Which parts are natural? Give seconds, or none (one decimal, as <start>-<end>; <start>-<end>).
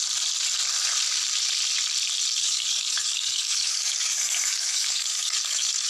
0.0-2.4